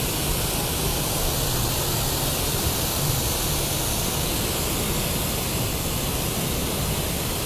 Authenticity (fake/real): fake